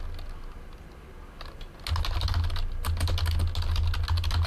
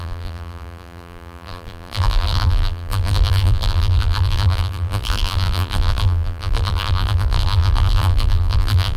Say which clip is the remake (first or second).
second